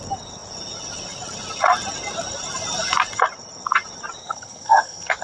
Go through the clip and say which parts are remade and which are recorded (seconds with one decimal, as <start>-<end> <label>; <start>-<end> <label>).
0.0-4.2 recorded; 4.2-5.2 remade